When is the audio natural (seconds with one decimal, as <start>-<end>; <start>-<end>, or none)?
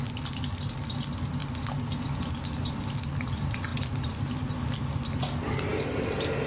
0.0-6.5